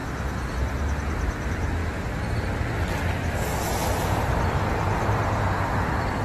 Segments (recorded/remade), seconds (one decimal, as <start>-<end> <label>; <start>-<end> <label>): 0.0-1.8 remade; 1.8-4.5 recorded; 4.5-6.2 remade